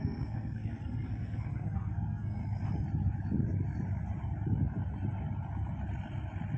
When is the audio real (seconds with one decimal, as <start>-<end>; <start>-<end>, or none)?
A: 2.4-6.6